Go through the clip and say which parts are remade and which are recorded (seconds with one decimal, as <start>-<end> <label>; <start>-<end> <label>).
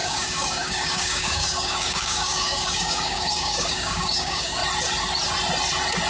0.0-4.6 remade; 4.6-6.1 recorded